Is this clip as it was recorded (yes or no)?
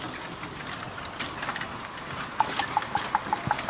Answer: yes